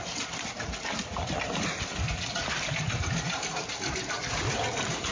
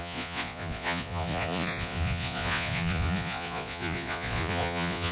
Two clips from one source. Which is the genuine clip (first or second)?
first